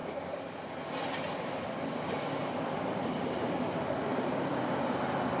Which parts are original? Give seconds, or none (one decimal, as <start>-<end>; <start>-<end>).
0.0-2.4; 3.2-4.1; 5.0-5.4